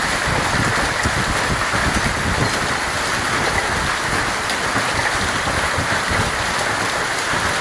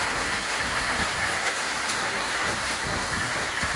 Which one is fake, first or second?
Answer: second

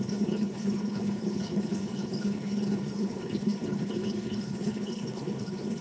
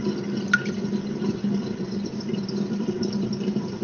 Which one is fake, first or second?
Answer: first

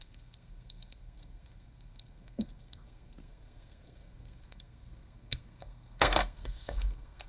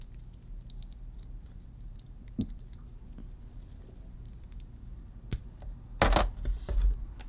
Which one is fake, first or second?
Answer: first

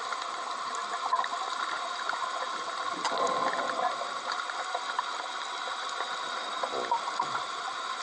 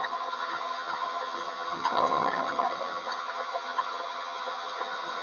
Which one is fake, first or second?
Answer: second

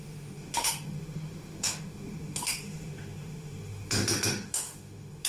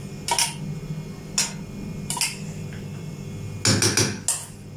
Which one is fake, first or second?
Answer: first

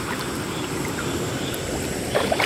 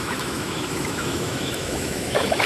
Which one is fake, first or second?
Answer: second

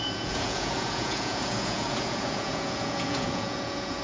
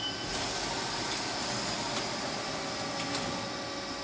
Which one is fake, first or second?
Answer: first